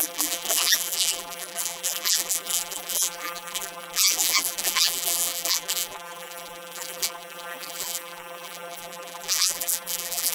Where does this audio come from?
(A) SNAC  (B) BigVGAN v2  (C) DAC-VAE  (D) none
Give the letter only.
B